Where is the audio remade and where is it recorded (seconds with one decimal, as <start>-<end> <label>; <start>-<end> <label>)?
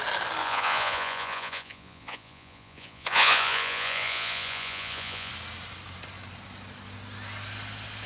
0.0-0.4 recorded; 0.4-5.3 remade; 5.3-8.1 recorded